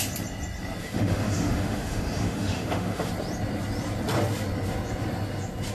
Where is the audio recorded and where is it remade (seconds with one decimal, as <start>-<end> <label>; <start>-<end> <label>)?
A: 0.0-0.8 recorded; 0.8-3.1 remade; 3.1-5.7 recorded